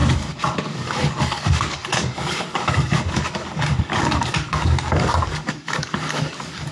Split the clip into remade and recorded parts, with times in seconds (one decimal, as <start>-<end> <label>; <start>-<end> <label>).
0.0-6.7 remade